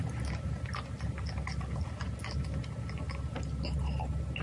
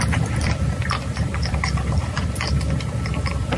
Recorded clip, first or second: first